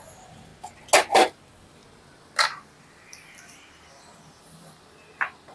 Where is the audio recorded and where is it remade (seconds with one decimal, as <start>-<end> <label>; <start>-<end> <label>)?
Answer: 0.0-0.5 remade; 0.5-1.1 recorded; 1.1-1.8 remade; 1.8-2.8 recorded; 2.8-5.5 remade